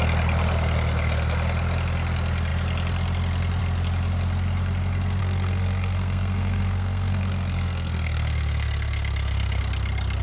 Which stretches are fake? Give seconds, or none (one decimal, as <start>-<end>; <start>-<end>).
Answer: 5.2-9.6